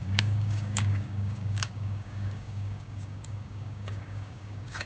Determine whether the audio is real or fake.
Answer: fake